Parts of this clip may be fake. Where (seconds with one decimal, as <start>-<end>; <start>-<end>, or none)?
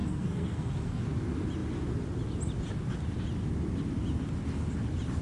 0.0-1.0